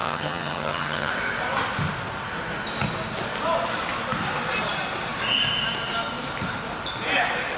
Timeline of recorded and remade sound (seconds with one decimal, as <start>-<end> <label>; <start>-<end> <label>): 0.0-1.1 remade; 1.1-7.6 recorded